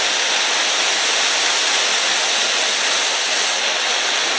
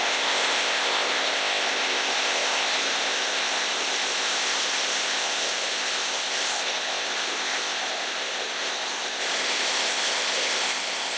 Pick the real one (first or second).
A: first